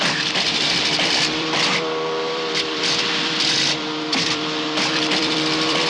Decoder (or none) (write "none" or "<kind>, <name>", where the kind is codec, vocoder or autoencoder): vocoder, BigVGAN v2